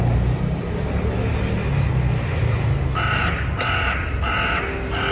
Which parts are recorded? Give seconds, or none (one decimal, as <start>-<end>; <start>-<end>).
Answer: 0.0-5.1